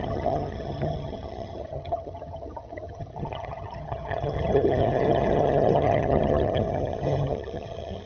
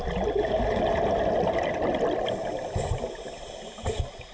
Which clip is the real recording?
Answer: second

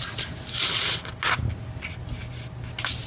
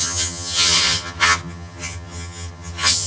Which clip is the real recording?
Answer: first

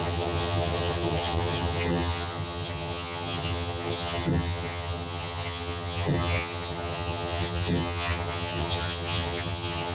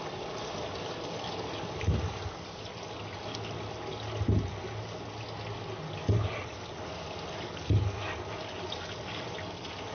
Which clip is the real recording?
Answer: second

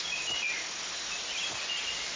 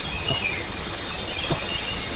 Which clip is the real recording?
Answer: first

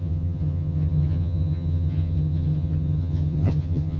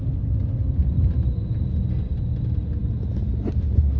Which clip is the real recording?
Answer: second